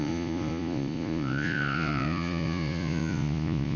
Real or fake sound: fake